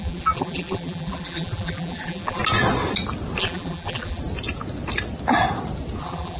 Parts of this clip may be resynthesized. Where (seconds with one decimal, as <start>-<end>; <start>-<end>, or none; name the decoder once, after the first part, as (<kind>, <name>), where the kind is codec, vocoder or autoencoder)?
0.0-2.4 (vocoder, BigVGAN v2); 3.4-4.2; 6.0-6.4